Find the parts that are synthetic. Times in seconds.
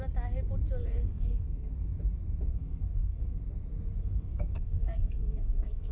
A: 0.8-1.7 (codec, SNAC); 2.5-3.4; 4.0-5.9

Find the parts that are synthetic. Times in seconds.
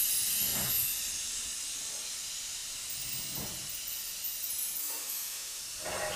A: 4.8-5.6 (autoencoder, DAC-VAE)